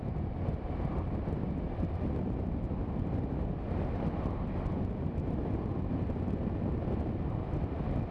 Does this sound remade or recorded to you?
recorded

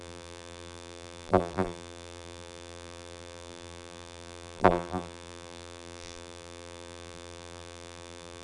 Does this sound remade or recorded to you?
remade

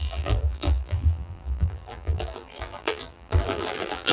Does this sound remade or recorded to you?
remade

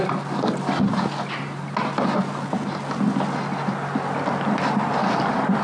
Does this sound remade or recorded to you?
recorded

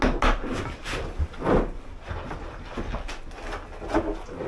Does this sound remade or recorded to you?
recorded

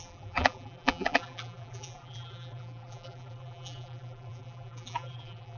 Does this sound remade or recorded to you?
remade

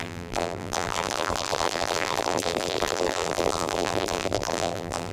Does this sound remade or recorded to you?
remade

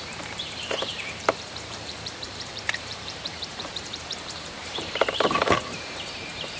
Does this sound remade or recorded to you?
remade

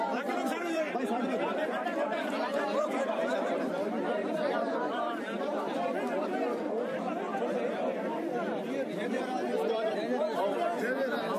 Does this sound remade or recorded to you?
remade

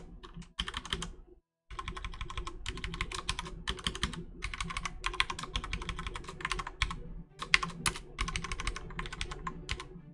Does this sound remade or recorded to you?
recorded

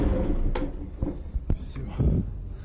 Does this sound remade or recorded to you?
recorded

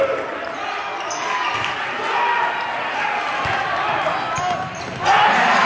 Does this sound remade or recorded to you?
recorded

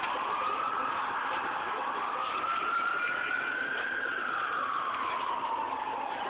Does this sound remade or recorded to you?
recorded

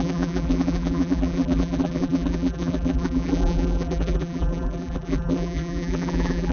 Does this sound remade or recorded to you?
remade